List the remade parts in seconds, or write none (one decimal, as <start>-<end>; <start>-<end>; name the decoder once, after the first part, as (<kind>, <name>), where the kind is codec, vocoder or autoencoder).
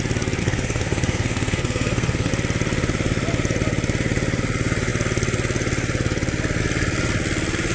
0.4-2.3 (codec, SNAC)